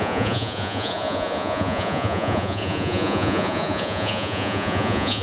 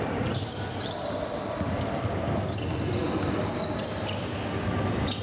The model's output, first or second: first